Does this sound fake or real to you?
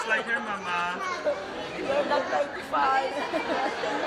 real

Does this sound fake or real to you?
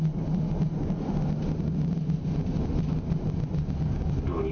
real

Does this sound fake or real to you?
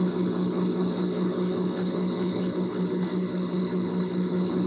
fake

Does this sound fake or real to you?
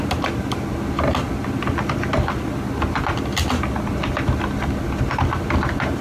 real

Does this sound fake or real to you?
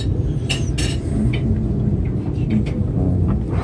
real